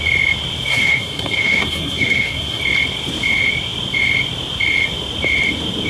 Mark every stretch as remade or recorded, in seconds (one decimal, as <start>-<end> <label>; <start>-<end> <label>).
0.0-0.7 recorded; 0.7-2.6 remade; 2.6-5.9 recorded